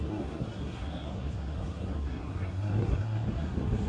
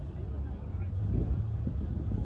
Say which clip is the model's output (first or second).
first